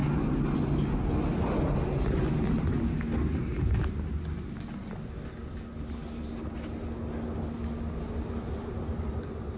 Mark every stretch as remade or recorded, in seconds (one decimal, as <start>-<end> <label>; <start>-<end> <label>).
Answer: 0.0-9.6 recorded